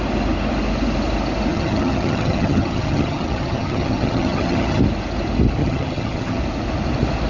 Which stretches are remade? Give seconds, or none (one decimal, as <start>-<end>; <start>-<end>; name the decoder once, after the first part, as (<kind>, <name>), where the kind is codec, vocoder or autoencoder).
1.5-4.8 (vocoder, HiFi-GAN); 5.6-6.4